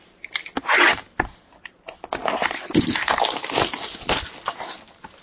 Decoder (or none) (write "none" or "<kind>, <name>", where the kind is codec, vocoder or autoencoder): none